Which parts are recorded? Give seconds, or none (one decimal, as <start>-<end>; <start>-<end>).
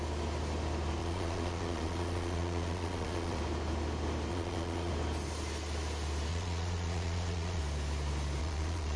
0.0-1.0; 3.4-4.3; 4.9-6.3; 7.6-8.4